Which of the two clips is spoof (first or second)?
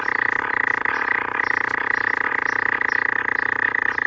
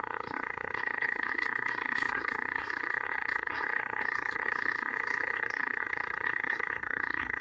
second